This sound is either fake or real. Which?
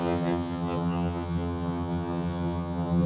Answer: fake